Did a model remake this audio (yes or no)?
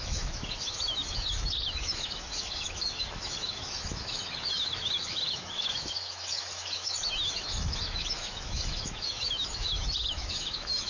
yes